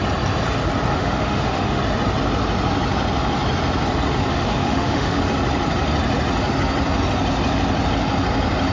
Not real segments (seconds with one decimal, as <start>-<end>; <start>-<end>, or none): 0.9-1.8; 4.3-5.2